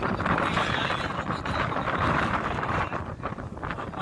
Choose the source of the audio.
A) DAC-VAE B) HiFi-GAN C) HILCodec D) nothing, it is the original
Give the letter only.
D